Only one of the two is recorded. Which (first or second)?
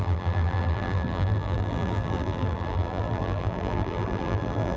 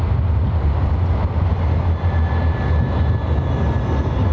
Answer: second